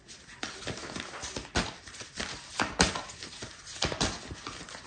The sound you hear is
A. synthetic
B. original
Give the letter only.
B